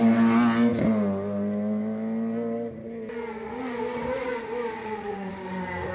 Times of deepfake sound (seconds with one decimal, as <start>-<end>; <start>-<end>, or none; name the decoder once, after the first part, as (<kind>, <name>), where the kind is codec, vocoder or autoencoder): 4.8-5.3 (vocoder, Vocos)